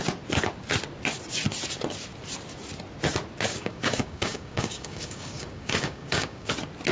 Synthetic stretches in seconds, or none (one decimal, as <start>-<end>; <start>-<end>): 3.5-6.5